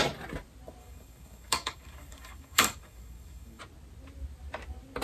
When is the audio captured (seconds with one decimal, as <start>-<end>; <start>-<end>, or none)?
0.0-0.8; 3.6-5.0